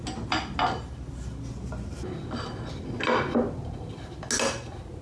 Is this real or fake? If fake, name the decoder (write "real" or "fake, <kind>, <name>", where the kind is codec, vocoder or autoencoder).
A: real